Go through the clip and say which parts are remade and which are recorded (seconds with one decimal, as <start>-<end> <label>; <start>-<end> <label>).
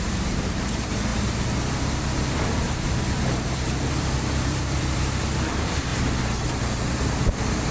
0.0-5.9 remade; 5.9-6.6 recorded; 6.6-7.7 remade